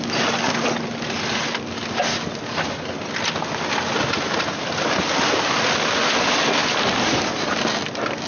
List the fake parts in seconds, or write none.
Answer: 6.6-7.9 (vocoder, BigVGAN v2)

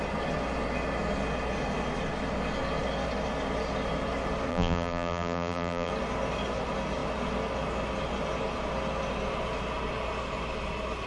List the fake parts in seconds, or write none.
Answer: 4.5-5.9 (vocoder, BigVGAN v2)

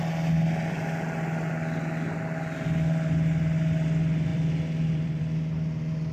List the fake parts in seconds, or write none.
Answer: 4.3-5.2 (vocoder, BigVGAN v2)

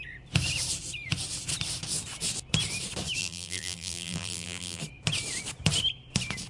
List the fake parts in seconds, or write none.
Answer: 3.2-4.8 (vocoder, BigVGAN v2)